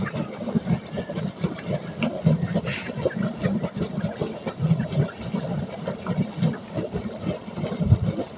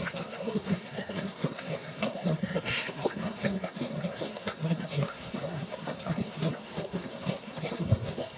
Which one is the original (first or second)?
first